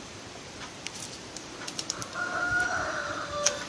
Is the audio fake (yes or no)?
yes